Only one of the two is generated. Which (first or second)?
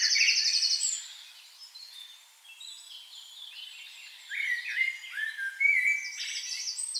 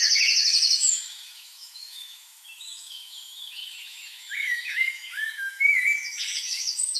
second